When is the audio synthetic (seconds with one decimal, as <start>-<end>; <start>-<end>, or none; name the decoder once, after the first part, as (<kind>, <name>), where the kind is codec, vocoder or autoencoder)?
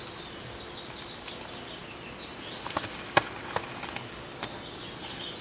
none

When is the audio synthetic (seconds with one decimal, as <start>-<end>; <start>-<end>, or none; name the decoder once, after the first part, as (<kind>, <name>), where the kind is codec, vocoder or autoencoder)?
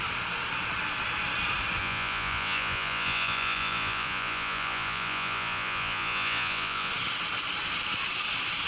1.8-6.9 (vocoder, Vocos)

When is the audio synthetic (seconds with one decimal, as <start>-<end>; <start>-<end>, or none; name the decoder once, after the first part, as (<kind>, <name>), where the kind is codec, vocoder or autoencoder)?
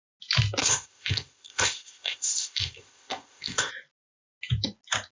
0.6-3.7 (codec, ZipCodec)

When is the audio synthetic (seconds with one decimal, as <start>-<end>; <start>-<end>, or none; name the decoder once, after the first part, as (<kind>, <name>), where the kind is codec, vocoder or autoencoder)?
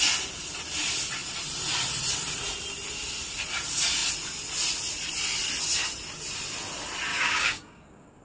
7.1-8.2 (codec, DAC)